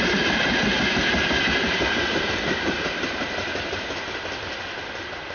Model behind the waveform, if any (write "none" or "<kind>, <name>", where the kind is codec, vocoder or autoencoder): none